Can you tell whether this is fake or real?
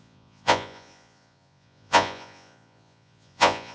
fake